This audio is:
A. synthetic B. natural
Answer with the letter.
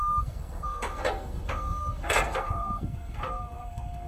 A